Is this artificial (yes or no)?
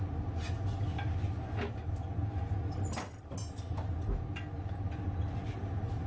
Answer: no